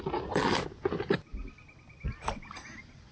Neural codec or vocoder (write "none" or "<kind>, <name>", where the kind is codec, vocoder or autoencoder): none